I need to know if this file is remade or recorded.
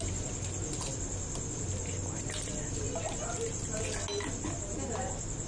recorded